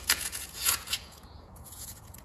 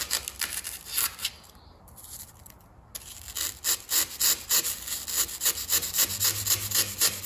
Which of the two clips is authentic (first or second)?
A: second